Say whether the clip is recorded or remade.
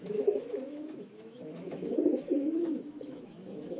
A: remade